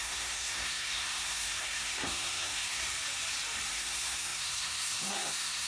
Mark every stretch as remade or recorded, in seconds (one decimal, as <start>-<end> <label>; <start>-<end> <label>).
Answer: 0.0-2.8 remade; 2.8-3.7 recorded; 3.7-5.7 remade